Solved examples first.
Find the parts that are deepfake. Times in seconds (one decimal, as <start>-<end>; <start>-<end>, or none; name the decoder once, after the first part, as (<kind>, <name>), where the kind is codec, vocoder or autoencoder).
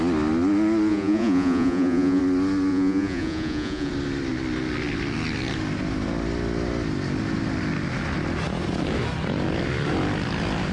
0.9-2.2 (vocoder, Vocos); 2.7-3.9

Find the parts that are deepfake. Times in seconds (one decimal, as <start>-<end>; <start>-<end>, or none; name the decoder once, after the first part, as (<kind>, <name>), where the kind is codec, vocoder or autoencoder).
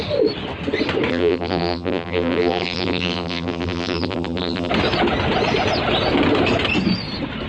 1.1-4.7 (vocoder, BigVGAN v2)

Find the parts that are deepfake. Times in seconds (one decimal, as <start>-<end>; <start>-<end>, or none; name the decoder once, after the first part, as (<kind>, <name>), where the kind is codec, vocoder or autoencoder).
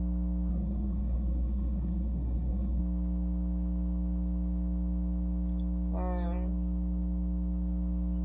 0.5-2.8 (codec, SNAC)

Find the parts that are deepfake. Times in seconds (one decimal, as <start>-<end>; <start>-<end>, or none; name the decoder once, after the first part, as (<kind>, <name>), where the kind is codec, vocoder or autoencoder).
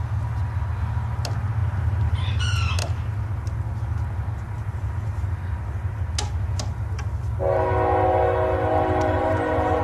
1.6-2.4 (vocoder, BigVGAN v2); 8.7-9.8